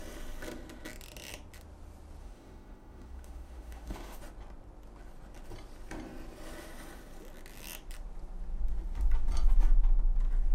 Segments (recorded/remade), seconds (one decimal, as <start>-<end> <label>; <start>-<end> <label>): 0.0-2.2 recorded; 2.2-4.2 remade; 4.2-10.5 recorded